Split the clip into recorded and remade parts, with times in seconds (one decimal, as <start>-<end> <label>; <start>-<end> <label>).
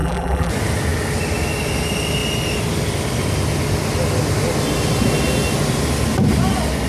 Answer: 0.0-0.5 remade; 0.5-6.9 recorded